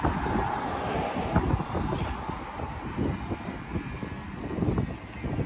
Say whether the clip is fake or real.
real